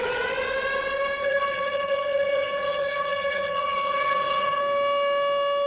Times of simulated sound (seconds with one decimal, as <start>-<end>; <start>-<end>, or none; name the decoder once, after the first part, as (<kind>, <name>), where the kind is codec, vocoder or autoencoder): 1.2-4.6 (vocoder, HiFi-GAN)